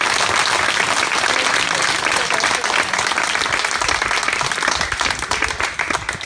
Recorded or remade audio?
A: recorded